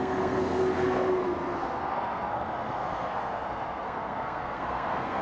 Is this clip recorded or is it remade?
remade